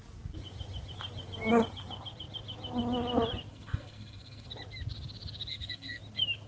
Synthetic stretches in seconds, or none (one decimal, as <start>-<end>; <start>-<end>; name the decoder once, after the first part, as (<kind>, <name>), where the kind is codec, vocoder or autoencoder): 3.5-4.5 (codec, SNAC); 5.5-6.0